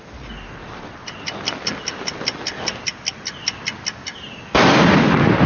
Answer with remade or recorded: recorded